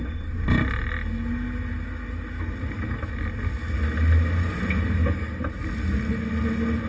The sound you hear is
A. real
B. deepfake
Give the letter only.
A